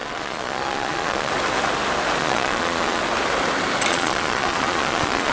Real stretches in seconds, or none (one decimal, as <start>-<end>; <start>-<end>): 1.3-2.2; 3.0-3.9